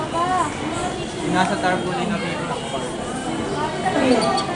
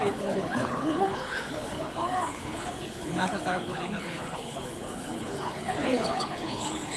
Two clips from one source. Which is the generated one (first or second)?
second